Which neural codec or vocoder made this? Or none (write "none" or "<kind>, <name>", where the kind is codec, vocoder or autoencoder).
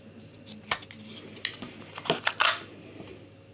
none